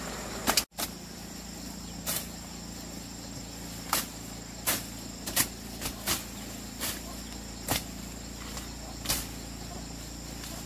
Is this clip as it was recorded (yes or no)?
yes